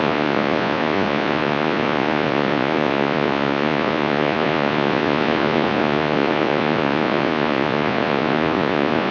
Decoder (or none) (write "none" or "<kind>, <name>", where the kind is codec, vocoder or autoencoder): vocoder, Vocos